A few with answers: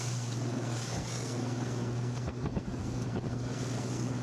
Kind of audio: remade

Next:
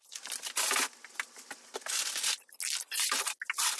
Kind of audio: recorded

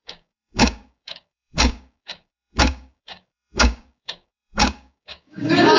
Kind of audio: remade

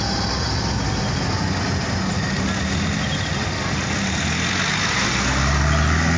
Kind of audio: recorded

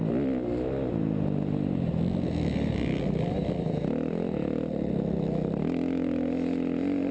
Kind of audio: recorded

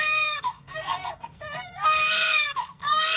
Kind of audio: remade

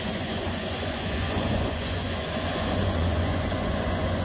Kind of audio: remade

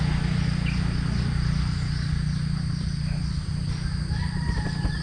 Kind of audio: recorded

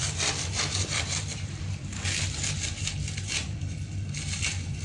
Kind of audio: remade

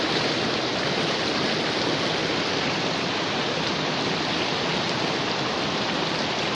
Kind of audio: recorded